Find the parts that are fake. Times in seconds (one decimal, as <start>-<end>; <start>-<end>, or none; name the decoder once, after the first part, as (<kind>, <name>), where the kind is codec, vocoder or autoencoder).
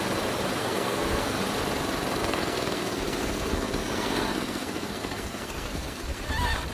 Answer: 0.6-1.4 (codec, SNAC); 2.2-6.2